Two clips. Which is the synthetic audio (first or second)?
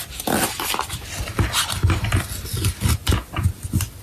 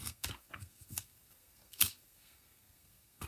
second